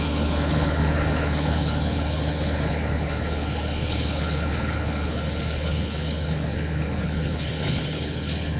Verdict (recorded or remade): remade